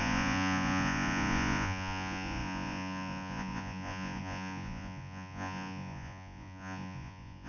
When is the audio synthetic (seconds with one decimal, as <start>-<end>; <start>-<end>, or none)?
0.0-7.5